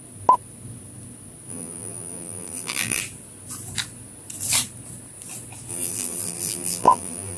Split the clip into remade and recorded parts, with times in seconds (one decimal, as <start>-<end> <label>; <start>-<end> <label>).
0.0-1.5 recorded; 1.5-3.0 remade; 3.0-5.7 recorded; 5.7-7.4 remade